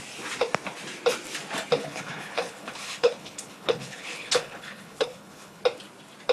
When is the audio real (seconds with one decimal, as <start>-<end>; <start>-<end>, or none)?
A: 0.0-1.8; 5.6-6.3